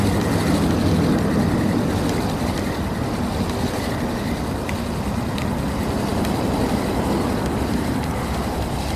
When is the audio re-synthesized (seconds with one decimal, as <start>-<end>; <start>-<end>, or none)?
none

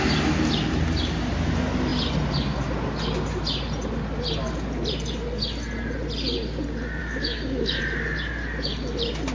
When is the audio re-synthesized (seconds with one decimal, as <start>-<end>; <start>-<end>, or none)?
7.0-7.8

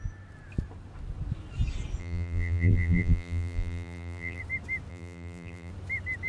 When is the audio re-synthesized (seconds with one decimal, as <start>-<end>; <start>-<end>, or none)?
2.0-4.4; 4.9-5.7

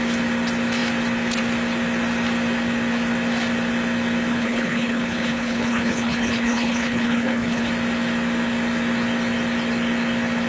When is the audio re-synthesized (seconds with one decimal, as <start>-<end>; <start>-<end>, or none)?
4.3-7.7

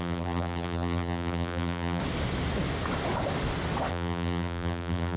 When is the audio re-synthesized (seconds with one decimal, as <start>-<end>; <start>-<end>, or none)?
0.0-2.0; 3.9-5.2

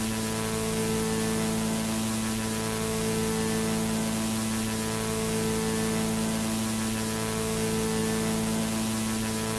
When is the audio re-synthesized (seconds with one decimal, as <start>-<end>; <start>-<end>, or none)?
none